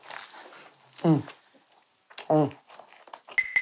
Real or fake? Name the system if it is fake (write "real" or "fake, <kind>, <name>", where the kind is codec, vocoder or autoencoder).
real